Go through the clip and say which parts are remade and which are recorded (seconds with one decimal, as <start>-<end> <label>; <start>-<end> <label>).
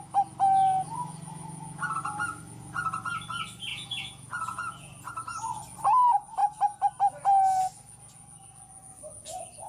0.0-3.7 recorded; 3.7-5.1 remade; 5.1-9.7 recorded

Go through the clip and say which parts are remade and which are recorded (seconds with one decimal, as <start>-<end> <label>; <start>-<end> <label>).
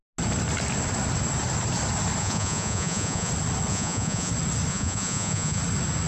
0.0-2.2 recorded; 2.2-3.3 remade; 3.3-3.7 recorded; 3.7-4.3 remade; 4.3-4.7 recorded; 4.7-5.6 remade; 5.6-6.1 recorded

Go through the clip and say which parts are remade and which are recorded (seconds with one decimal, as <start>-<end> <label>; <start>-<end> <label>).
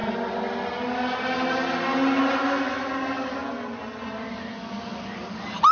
0.0-5.7 recorded